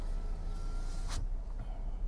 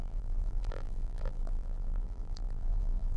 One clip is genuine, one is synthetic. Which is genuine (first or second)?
first